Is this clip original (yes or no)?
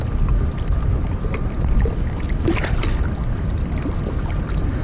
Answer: yes